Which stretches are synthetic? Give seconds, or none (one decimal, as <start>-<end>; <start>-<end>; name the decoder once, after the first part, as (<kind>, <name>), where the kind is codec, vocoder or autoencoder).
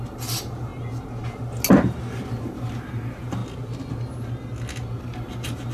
0.0-0.7 (vocoder, BigVGAN v2); 2.3-3.4; 5.0-5.7